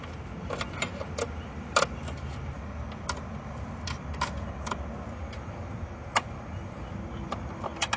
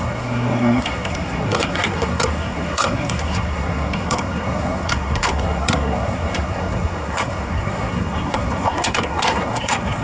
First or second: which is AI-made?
second